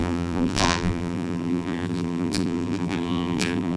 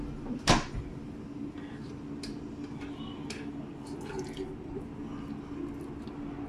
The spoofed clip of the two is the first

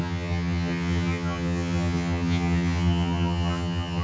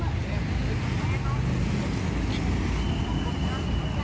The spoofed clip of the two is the first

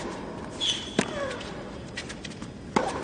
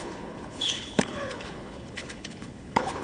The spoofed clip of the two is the second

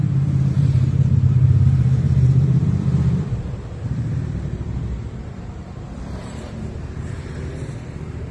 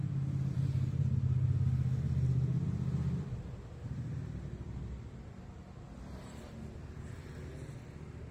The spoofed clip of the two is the first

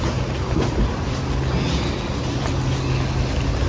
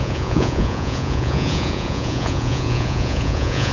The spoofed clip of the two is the second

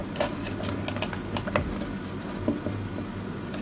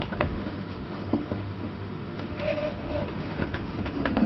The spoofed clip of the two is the second